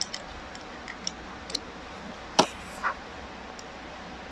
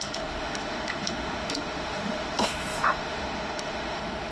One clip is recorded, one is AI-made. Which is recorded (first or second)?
first